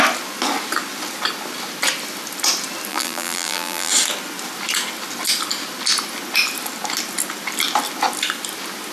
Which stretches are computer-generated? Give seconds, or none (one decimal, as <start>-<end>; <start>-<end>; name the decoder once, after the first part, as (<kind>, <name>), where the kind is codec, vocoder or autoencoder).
2.9-3.9 (vocoder, BigVGAN v2)